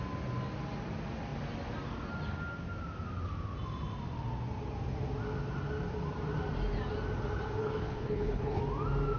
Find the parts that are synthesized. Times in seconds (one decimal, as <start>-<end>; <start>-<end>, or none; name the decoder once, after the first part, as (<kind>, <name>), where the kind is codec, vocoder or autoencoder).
7.6-8.6 (codec, HILCodec)